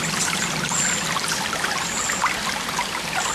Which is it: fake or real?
real